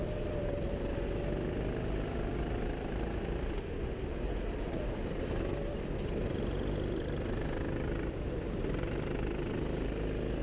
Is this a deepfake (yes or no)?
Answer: no